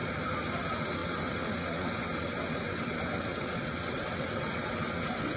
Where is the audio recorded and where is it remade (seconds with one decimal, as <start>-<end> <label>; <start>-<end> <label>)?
0.0-0.6 recorded; 0.6-5.4 remade